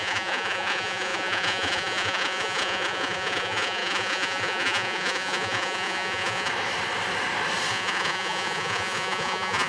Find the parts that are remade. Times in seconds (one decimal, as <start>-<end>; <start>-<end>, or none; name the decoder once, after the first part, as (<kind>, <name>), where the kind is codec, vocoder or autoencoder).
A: 0.0-6.5 (vocoder, Vocos); 7.7-9.7